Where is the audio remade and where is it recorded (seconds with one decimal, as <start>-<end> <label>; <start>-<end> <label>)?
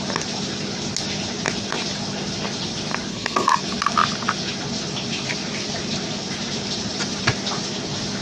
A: 0.0-3.1 recorded; 3.1-3.6 remade; 3.6-8.2 recorded